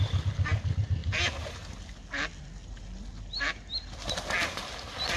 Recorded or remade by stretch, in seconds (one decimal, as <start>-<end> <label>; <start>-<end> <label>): 0.0-5.2 recorded